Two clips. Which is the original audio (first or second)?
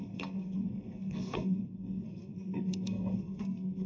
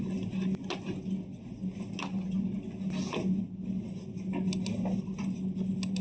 second